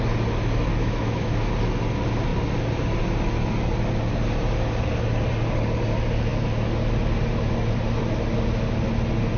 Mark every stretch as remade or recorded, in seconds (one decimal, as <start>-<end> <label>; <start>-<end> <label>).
0.0-0.7 recorded; 0.7-1.4 remade; 1.4-9.4 recorded